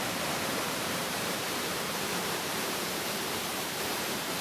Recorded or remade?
remade